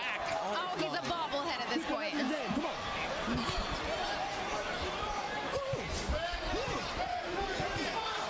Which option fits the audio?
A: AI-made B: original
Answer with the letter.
B